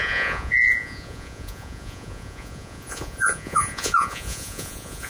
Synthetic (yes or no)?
yes